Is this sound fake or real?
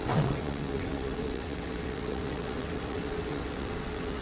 fake